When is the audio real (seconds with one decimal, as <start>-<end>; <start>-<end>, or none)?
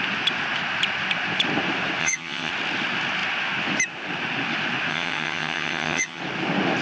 0.0-2.0; 2.5-4.9; 6.2-6.8